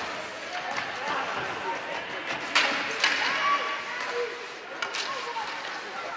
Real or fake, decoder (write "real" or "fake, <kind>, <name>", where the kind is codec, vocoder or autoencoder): real